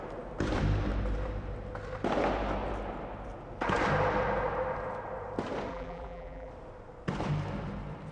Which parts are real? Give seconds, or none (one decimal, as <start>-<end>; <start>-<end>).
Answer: 0.0-5.7; 6.5-8.1